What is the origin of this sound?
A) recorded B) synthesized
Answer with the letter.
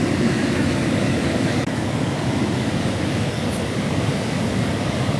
B